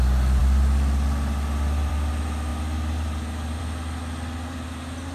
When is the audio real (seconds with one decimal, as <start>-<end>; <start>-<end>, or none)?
0.0-5.1